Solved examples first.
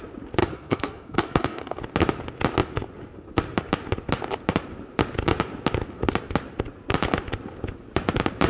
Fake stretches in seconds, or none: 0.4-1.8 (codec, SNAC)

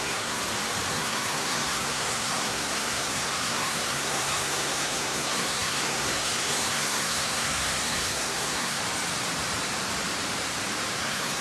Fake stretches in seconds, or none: 0.0-0.4 (codec, SNAC); 0.9-8.8; 11.0-11.4

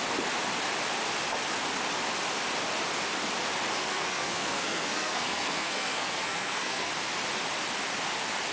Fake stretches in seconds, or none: 3.8-6.9 (codec, SNAC)

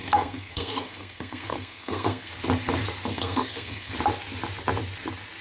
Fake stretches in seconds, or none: 0.0-2.3 (codec, SNAC); 3.1-3.9

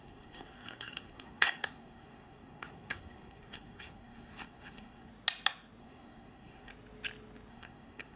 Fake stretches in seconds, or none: 0.0-5.1 (codec, SNAC); 5.8-6.7; 7.5-8.2

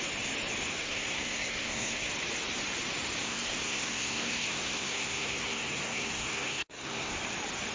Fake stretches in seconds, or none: 0.7-2.1 (codec, SNAC); 3.2-7.1

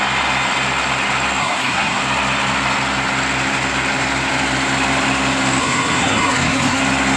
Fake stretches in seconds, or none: 1.4-2.0 (codec, SNAC); 5.6-6.8